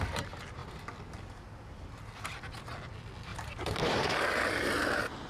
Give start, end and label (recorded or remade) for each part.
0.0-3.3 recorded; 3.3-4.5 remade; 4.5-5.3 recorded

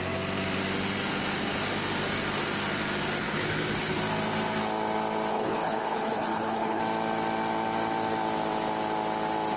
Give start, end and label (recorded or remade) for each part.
0.0-3.2 recorded; 3.2-4.0 remade; 4.0-5.3 recorded; 5.3-6.8 remade; 6.8-9.6 recorded

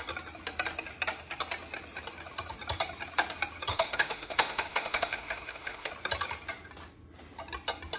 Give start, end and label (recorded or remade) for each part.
0.0-3.7 recorded; 3.7-5.9 remade; 5.9-8.0 recorded

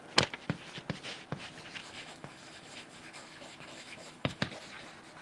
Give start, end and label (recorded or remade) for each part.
0.0-1.8 recorded; 1.8-4.4 remade; 4.4-5.2 recorded

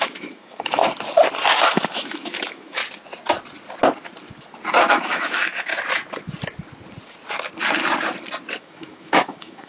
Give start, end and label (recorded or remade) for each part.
0.0-0.8 remade; 0.8-1.6 recorded; 1.6-2.8 remade; 2.8-4.9 recorded; 4.9-5.7 remade; 5.7-8.6 recorded; 8.6-9.7 remade

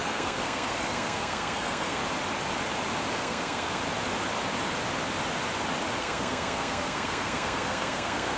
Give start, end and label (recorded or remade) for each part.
0.0-2.0 remade; 2.0-3.1 recorded; 3.1-3.8 remade; 3.8-6.0 recorded; 6.0-8.4 remade

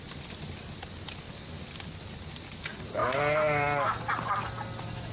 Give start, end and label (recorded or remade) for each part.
0.0-5.1 recorded